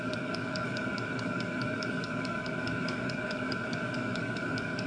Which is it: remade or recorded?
remade